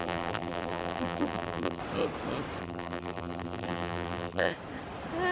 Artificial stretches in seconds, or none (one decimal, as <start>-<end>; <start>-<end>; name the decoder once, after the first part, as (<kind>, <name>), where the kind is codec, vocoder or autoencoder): 0.0-1.8 (vocoder, BigVGAN v2); 2.6-4.5